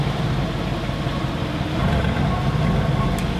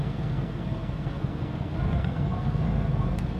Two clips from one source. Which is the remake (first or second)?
second